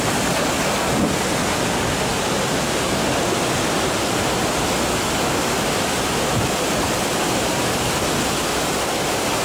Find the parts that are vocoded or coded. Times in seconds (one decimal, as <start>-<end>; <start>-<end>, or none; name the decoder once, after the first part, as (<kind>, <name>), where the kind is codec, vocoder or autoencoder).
none